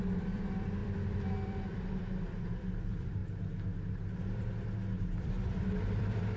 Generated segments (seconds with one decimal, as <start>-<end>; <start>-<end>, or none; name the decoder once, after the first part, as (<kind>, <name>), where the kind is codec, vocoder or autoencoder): 0.0-3.2 (vocoder, BigVGAN v2); 5.0-6.4